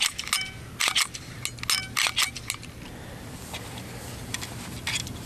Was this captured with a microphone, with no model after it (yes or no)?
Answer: yes